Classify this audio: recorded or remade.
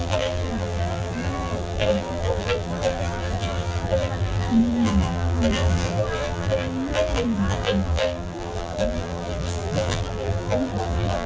remade